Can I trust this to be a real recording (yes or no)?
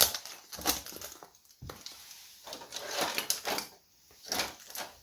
yes